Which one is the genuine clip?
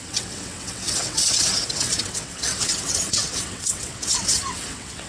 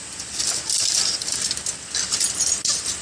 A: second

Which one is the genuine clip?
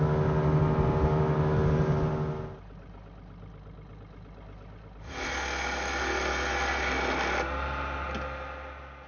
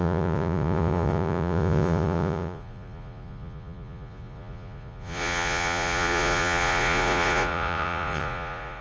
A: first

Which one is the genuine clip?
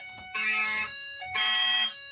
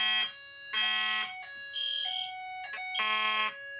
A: second